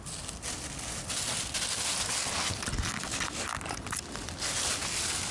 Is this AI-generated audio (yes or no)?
no